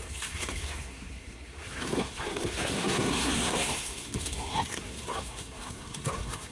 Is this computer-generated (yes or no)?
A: yes